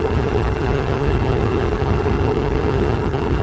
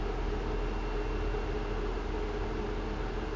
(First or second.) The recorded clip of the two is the second